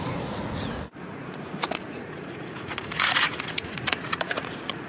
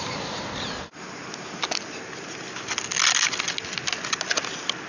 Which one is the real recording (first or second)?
second